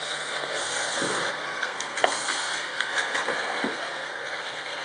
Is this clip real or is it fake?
fake